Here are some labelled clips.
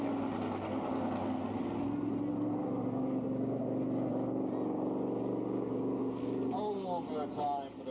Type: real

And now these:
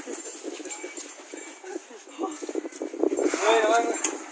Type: real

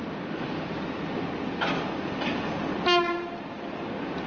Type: real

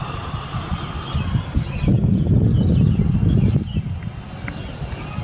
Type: real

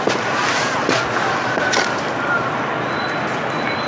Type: real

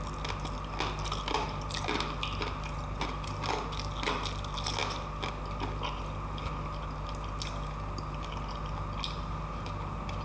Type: real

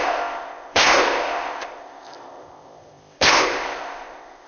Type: fake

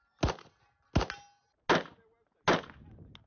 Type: real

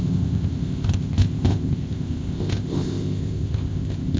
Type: fake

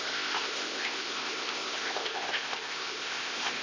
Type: fake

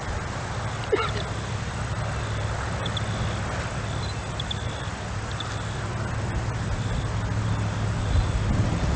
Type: real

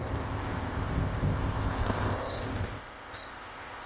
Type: fake